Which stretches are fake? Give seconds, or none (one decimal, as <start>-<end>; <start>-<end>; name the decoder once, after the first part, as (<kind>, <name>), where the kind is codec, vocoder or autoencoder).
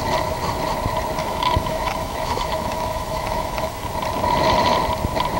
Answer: 1.2-3.7 (autoencoder, DAC-VAE)